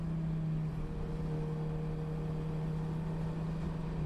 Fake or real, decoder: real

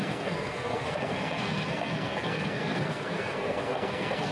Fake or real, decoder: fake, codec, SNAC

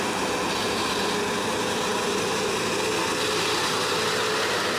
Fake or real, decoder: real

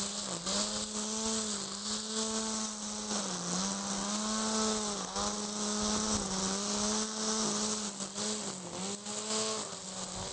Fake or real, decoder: real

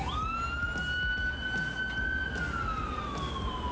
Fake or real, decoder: real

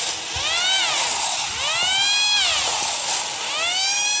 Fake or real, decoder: real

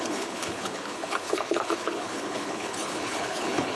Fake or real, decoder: fake, codec, HILCodec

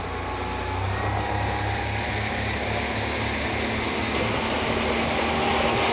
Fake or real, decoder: real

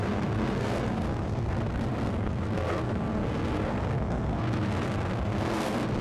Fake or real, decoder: fake, codec, SNAC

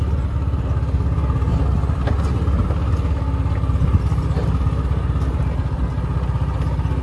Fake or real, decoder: real